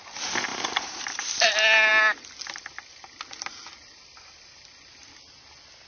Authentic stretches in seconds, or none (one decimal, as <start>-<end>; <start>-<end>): 0.0-0.5; 1.5-5.9